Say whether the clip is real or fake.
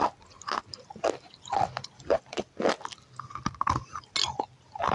real